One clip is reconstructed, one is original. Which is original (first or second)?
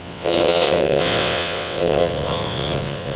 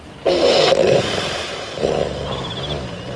second